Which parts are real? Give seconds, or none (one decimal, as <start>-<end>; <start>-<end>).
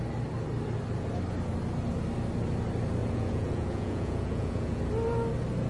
0.0-3.0; 4.8-5.7